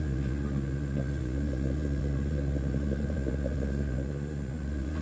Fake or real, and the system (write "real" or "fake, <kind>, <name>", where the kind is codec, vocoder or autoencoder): fake, vocoder, Vocos